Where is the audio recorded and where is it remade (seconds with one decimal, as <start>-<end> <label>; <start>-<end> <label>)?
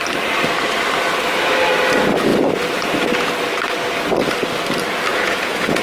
0.0-5.1 recorded; 5.1-5.8 remade